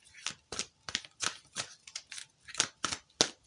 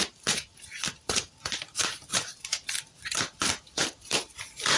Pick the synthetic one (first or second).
second